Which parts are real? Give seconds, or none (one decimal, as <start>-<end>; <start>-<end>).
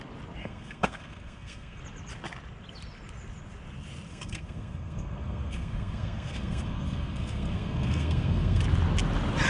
0.0-0.4; 1.8-4.1; 8.6-9.5